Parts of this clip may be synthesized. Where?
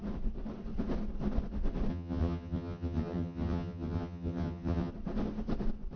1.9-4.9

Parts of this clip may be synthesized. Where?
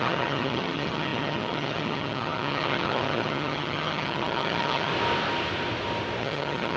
0.0-4.9; 6.2-6.8